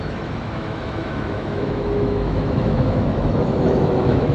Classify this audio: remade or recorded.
remade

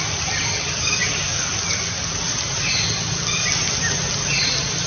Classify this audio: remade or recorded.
recorded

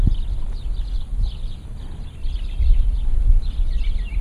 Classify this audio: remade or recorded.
recorded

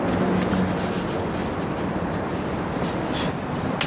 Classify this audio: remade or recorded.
recorded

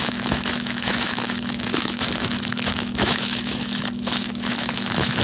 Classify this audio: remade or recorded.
remade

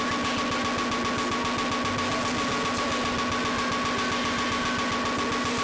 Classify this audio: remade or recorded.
recorded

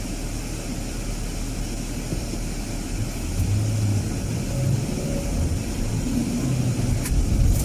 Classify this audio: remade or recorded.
recorded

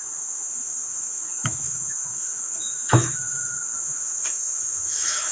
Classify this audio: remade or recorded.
remade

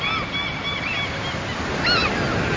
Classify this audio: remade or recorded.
recorded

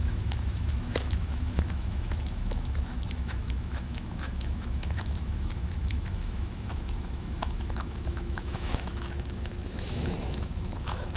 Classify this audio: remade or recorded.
remade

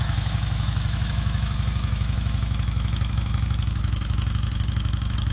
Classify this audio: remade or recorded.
remade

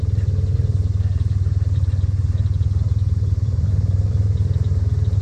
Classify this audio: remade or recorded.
recorded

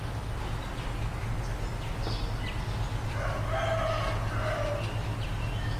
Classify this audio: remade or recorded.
recorded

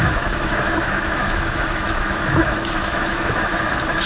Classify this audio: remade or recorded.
remade